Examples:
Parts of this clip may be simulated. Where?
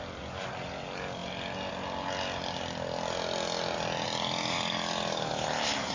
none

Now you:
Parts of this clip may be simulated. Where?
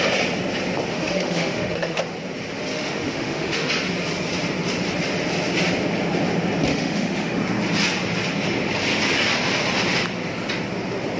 0.9-2.0 (autoencoder, DAC-VAE); 2.7-3.7; 6.7-7.4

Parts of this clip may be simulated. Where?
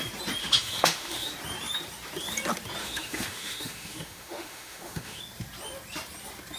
0.4-1.3 (autoencoder, DAC-VAE); 2.8-5.2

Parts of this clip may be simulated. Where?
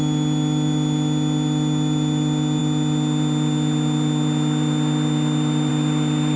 none